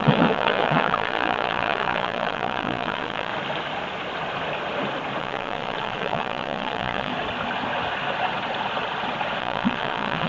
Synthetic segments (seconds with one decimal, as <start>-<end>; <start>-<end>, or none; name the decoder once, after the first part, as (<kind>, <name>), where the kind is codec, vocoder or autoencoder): 0.0-3.3 (vocoder, Vocos); 5.2-7.1; 9.4-10.3